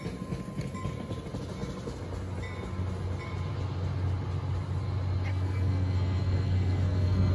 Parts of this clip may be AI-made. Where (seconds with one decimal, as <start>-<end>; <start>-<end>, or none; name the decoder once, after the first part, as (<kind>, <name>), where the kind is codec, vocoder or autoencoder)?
5.3-7.3 (codec, SNAC)

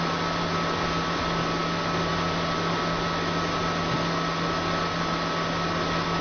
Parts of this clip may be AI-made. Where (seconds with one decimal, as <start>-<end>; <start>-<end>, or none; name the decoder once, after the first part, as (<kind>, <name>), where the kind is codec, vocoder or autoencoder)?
none

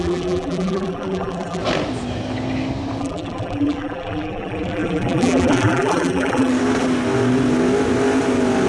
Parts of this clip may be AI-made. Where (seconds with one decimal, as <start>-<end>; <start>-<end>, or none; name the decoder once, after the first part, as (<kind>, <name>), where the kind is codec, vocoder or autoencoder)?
0.0-1.6 (vocoder, BigVGAN v2); 3.0-6.5